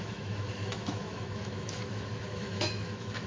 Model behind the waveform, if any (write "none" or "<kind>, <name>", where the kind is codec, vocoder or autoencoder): autoencoder, DAC-VAE